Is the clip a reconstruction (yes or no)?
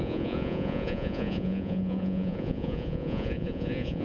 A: yes